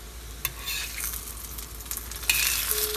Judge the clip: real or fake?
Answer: real